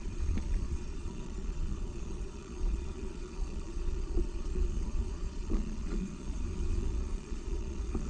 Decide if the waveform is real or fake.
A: fake